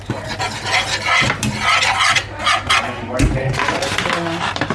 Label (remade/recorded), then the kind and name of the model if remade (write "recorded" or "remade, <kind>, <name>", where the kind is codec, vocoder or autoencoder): recorded